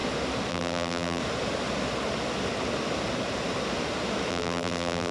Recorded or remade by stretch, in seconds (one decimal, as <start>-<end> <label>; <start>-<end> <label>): 0.0-0.5 recorded; 0.5-1.2 remade; 1.2-4.3 recorded; 4.3-5.1 remade